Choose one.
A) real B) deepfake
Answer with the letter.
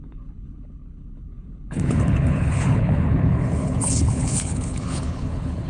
B